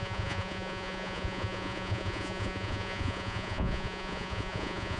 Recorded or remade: remade